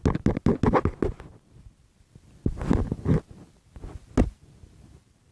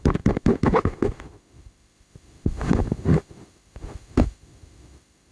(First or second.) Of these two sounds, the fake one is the second